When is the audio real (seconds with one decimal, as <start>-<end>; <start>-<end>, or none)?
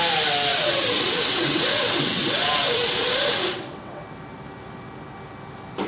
0.0-0.5; 4.0-5.9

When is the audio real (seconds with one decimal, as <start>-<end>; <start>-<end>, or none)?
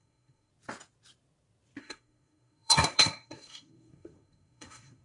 0.5-1.8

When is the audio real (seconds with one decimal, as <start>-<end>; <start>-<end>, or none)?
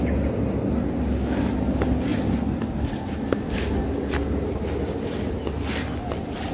0.0-6.5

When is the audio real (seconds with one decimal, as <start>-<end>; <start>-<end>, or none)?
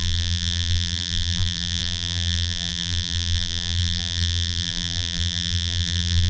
none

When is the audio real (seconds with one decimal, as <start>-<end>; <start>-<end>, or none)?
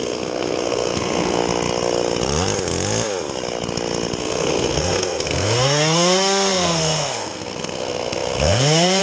1.4-4.2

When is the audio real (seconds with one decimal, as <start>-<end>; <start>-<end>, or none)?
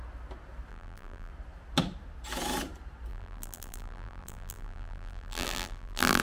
0.0-0.7; 1.3-3.1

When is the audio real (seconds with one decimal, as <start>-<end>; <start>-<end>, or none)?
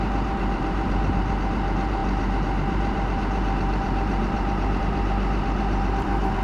none